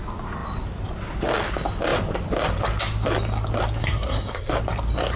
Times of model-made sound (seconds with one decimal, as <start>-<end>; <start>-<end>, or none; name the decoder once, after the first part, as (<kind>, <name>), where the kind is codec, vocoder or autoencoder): 3.8-4.5 (codec, SNAC)